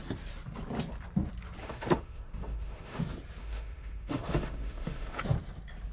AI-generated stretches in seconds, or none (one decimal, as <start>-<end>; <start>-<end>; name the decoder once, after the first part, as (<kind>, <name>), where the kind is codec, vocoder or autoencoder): 1.6-3.0 (autoencoder, DAC-VAE); 3.4-5.2